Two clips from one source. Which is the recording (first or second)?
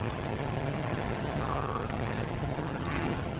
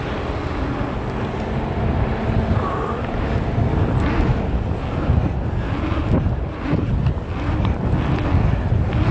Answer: second